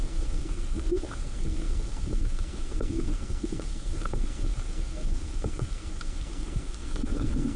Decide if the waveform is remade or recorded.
remade